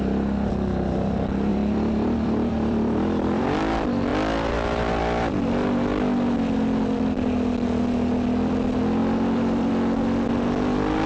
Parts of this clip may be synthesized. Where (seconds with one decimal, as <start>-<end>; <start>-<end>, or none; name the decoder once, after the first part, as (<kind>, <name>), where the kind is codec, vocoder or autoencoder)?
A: 1.5-3.6 (vocoder, BigVGAN v2); 4.1-5.0; 9.0-9.7